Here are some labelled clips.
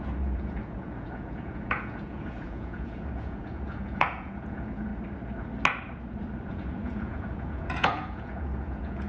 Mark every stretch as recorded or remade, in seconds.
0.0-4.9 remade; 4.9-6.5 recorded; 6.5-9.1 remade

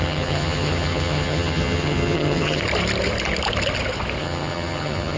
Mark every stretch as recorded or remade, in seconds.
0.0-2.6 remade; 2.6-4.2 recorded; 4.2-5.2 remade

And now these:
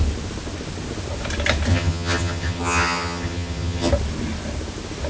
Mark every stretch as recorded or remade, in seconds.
0.0-1.7 recorded; 1.7-3.9 remade; 3.9-5.1 recorded

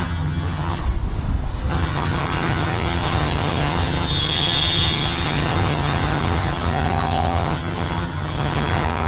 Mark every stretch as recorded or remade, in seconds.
0.0-0.8 remade; 0.8-1.7 recorded; 1.7-9.1 remade

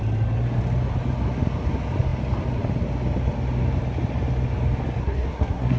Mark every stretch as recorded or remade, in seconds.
0.0-5.0 recorded; 5.0-5.8 remade

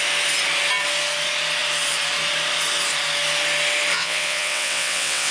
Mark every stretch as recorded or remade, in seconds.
0.0-3.9 recorded; 3.9-5.3 remade